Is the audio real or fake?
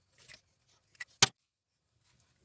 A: real